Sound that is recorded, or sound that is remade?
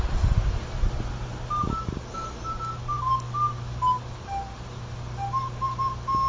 recorded